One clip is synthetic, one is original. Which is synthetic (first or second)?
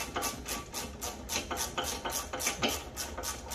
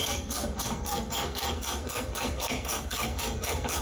second